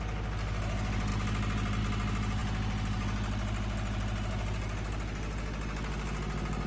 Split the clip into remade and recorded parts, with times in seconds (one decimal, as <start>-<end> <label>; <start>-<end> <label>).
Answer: 0.0-6.7 recorded